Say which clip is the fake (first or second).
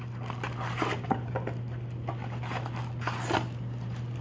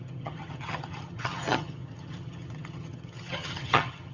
second